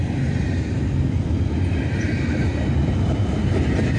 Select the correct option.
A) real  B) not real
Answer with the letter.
A